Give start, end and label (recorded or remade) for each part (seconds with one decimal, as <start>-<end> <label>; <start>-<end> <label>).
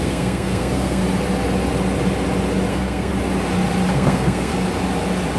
0.0-1.0 remade; 1.0-2.7 recorded; 2.7-3.1 remade; 3.1-3.9 recorded; 3.9-4.5 remade; 4.5-5.4 recorded